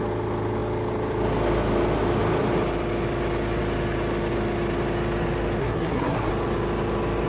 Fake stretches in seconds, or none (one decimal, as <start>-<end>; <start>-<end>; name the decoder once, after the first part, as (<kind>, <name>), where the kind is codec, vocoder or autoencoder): 5.6-6.3 (codec, SNAC)